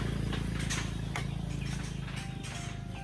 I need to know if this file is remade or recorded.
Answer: recorded